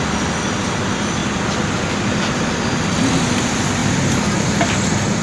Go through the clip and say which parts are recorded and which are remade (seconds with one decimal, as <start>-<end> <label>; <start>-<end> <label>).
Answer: 0.0-1.2 recorded; 1.2-2.4 remade; 2.4-5.2 recorded